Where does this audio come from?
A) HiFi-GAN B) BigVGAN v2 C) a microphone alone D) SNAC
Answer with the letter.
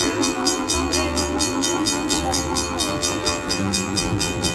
B